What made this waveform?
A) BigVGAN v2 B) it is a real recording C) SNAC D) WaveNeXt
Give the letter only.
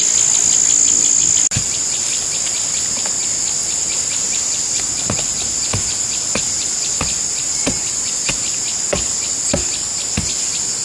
B